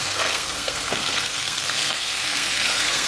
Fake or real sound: fake